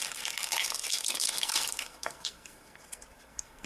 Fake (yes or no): yes